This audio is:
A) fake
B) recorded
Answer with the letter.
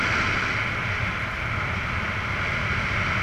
B